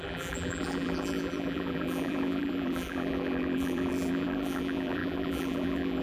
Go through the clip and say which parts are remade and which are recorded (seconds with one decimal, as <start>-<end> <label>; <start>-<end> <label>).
0.0-6.0 remade